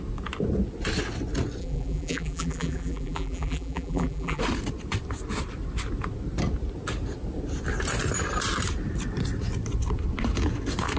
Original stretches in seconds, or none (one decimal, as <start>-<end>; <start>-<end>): 0.0-1.6; 4.4-11.0